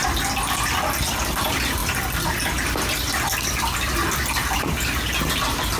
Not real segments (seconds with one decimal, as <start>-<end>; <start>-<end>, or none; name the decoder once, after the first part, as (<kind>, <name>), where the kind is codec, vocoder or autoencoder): 1.4-1.8 (vocoder, BigVGAN v2); 5.3-5.8